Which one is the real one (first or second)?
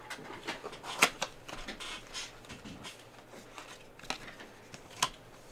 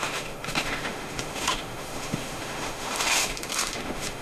first